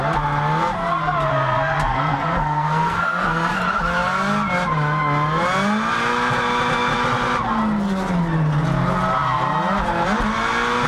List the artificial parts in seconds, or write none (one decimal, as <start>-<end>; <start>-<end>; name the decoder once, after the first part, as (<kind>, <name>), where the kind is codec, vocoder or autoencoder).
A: 1.3-3.6 (codec, SNAC)